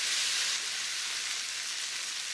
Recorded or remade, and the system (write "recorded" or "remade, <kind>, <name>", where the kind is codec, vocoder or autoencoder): recorded